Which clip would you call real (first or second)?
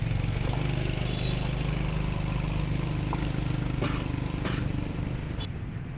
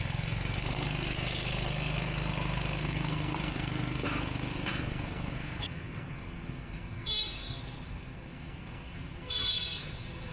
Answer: first